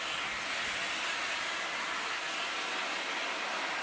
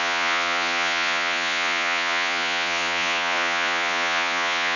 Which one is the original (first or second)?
first